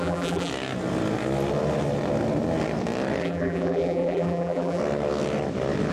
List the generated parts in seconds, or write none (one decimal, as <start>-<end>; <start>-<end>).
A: 0.0-0.5; 3.2-4.8